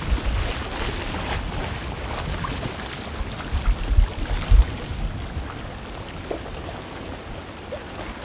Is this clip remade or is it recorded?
recorded